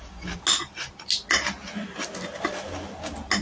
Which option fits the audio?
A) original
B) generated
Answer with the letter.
A